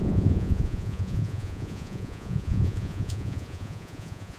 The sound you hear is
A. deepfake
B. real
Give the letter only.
A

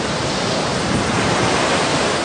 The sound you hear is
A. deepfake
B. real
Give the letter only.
B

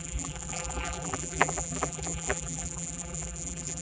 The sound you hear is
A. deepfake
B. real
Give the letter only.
A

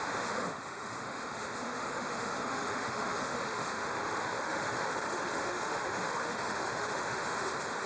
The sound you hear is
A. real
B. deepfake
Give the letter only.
B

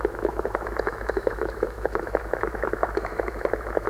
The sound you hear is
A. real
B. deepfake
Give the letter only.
B